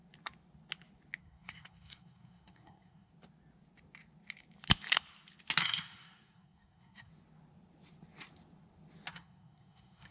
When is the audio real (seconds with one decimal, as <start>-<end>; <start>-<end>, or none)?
0.0-1.2; 3.1-5.6; 7.1-9.1